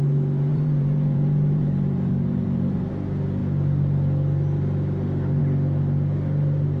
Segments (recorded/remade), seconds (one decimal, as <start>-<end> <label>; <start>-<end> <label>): 0.0-0.5 recorded; 0.5-2.9 remade; 2.9-6.8 recorded